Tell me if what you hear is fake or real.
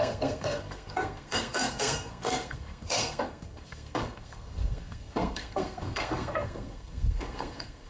fake